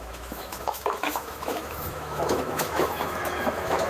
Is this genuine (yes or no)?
no